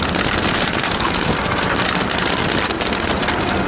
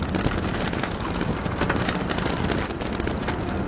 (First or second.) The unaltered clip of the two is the second